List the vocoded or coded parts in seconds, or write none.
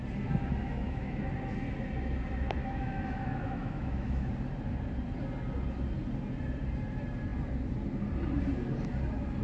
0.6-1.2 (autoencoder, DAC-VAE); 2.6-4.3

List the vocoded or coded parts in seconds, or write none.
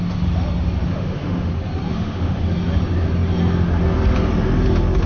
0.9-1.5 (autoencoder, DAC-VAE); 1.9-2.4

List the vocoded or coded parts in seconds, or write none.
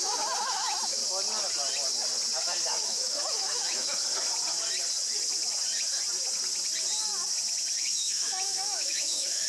0.0-1.0 (autoencoder, DAC-VAE); 2.8-4.0; 7.8-9.5